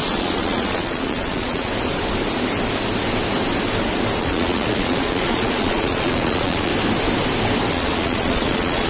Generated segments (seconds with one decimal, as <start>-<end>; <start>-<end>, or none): 0.0-1.7; 4.2-6.7; 7.7-8.9